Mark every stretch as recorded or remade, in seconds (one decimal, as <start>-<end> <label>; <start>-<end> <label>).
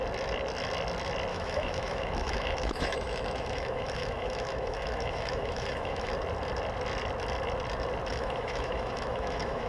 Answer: 0.0-1.3 recorded; 1.3-6.1 remade; 6.1-8.1 recorded; 8.1-9.7 remade